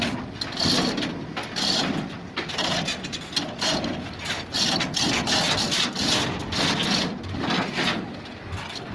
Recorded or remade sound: recorded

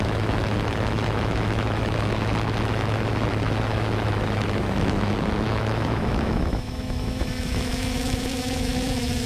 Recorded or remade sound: remade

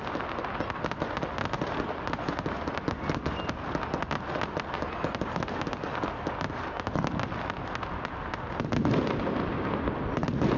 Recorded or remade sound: recorded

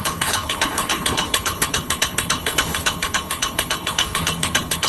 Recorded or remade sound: remade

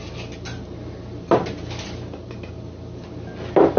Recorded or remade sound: recorded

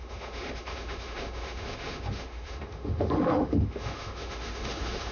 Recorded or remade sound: remade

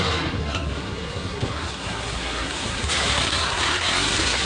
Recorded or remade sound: remade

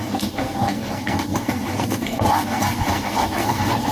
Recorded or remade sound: remade